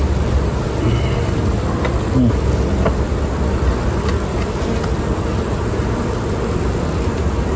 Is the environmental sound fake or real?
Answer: real